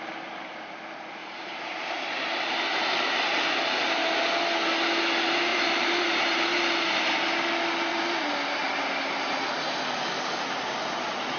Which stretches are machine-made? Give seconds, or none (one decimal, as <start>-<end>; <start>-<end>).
1.2-3.1; 5.5-6.7; 7.9-9.6